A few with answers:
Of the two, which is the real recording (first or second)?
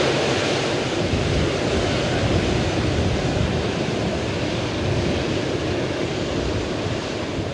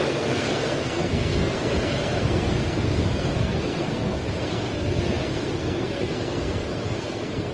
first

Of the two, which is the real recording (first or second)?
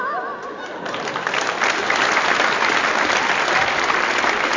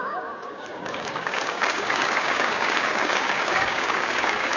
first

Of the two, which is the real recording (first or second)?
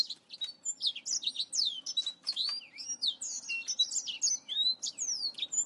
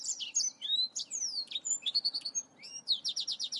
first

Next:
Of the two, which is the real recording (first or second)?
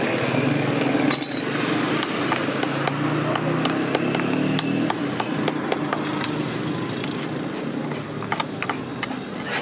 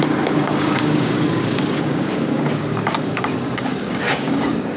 first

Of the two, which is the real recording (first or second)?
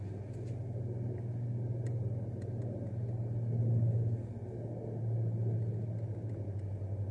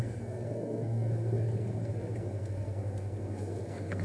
first